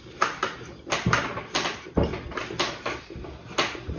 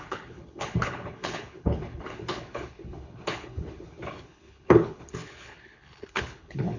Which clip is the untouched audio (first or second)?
first